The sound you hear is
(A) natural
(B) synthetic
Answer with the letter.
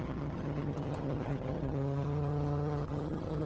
B